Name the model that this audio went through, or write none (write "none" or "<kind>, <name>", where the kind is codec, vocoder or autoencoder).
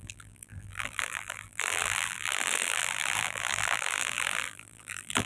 vocoder, BigVGAN v2